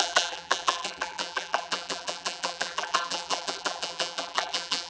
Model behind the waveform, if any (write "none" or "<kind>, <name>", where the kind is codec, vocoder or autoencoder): vocoder, BigVGAN v2